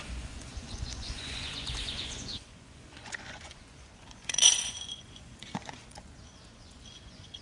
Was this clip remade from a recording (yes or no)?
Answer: yes